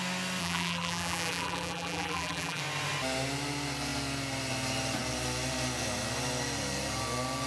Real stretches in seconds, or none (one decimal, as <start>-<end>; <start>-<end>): 0.0-0.4; 2.6-7.5